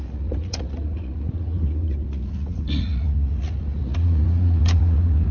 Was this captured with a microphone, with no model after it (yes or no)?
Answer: no